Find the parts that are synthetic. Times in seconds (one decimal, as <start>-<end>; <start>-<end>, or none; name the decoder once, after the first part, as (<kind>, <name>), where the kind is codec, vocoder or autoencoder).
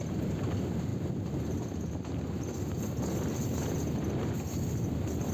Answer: none